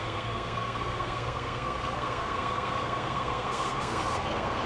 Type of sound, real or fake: fake